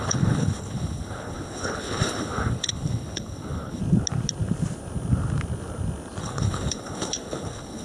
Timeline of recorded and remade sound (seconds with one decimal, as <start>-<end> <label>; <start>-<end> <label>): 0.0-3.8 remade; 3.8-6.2 recorded; 6.2-7.8 remade